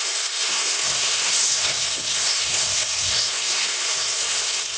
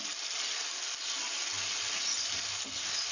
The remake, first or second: first